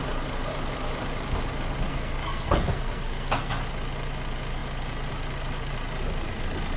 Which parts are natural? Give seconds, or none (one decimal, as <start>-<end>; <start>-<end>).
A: 0.0-1.9; 3.6-6.8